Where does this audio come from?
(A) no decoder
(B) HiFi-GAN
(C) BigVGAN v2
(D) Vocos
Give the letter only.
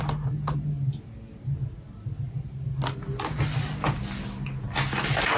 A